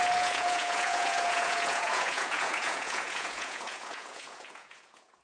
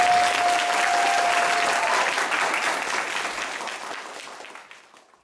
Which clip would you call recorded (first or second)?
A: second